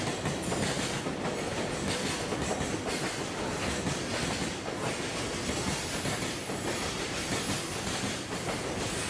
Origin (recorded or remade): recorded